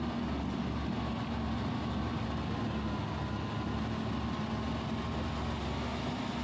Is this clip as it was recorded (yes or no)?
yes